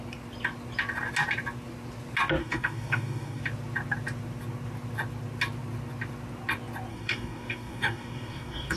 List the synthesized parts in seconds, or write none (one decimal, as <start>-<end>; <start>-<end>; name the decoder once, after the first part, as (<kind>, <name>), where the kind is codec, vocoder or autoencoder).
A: 2.4-3.4 (codec, DAC); 6.9-8.8